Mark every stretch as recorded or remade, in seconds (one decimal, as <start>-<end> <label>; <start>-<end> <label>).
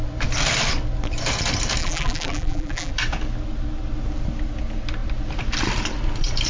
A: 0.0-1.8 recorded; 1.8-2.9 remade; 2.9-6.5 recorded